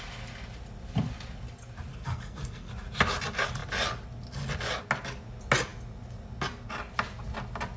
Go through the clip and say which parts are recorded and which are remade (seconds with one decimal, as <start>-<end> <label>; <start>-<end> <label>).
0.0-1.9 recorded; 1.9-2.7 remade; 2.7-7.8 recorded